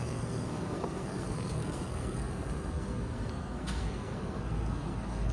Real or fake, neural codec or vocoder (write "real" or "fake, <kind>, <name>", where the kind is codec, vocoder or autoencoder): fake, codec, SNAC